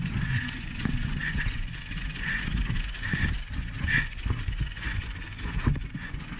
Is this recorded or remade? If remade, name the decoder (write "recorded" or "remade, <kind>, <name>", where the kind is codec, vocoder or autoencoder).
remade, vocoder, Vocos